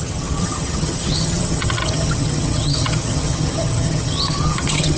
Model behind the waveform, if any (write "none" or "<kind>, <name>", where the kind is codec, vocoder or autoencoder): vocoder, HiFi-GAN